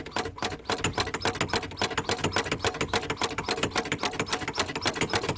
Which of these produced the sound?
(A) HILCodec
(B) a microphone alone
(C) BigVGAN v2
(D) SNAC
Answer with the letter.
B